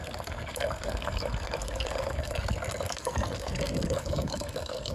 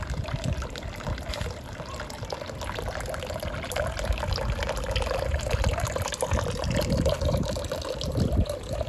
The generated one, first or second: first